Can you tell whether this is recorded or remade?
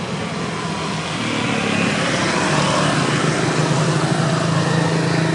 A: recorded